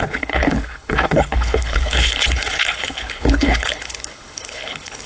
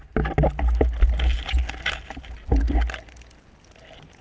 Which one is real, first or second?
second